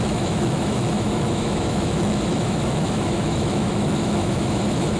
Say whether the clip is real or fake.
fake